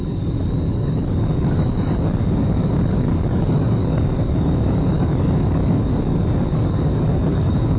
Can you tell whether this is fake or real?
fake